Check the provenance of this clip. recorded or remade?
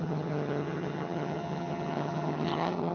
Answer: remade